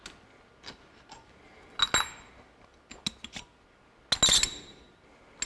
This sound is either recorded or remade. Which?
recorded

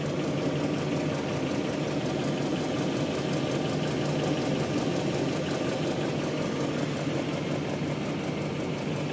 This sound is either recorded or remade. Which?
recorded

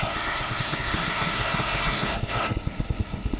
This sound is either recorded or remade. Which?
remade